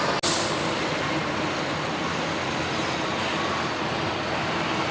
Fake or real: real